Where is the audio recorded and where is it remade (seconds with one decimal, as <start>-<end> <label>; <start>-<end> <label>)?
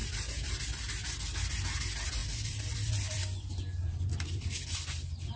0.0-0.7 remade; 0.7-2.2 recorded; 2.2-4.5 remade; 4.5-5.4 recorded